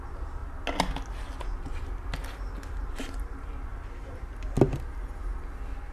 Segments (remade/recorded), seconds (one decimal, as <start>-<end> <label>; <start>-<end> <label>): 0.0-5.9 recorded